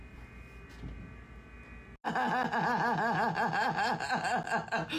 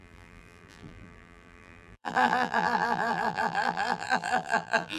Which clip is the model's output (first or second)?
second